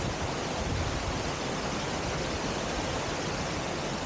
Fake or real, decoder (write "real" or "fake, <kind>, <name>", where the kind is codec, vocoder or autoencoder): real